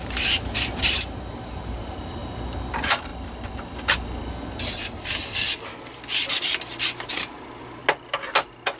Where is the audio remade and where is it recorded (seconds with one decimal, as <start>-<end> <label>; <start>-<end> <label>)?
0.0-2.2 remade; 2.2-2.7 recorded; 2.7-3.1 remade; 3.1-7.1 recorded; 7.1-7.8 remade; 7.8-8.8 recorded